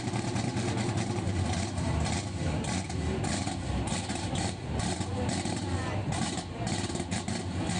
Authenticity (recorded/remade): recorded